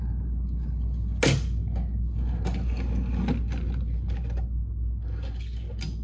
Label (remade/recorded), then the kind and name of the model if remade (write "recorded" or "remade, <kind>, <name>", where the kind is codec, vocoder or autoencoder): recorded